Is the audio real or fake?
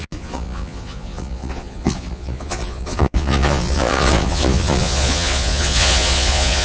fake